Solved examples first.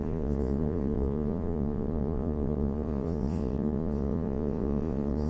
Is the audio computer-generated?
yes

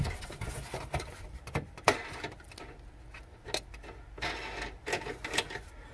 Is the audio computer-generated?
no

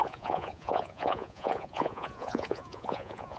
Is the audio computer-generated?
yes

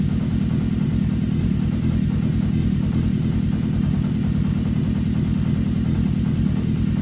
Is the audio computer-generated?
no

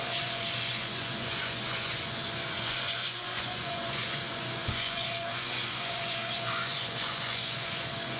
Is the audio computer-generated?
yes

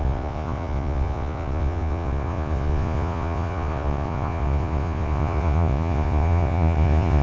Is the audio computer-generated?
yes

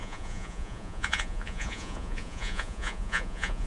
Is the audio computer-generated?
yes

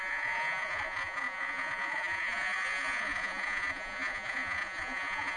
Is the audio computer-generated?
yes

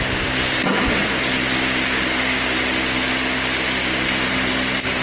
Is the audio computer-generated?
no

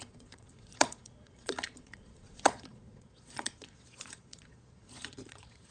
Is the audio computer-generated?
yes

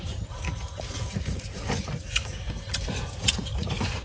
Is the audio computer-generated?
yes